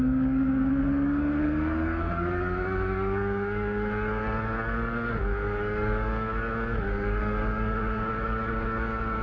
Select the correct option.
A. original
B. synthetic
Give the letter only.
B